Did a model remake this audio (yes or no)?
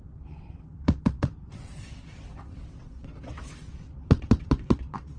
yes